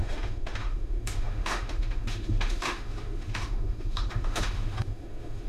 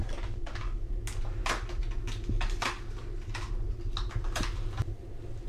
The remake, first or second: first